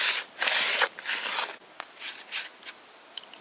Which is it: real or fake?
real